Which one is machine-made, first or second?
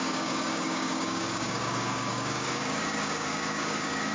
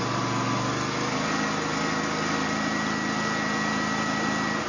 first